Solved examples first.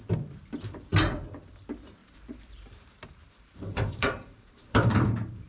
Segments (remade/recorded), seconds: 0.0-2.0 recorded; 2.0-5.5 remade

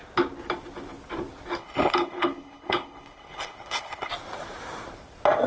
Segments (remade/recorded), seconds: 0.0-1.6 recorded; 1.6-4.1 remade; 4.1-5.5 recorded